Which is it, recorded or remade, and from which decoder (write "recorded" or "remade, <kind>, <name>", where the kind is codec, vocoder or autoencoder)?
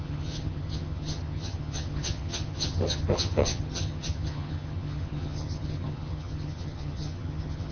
remade, vocoder, HiFi-GAN